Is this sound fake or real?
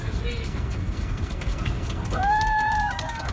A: fake